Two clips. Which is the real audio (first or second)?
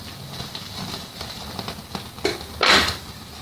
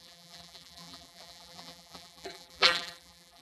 first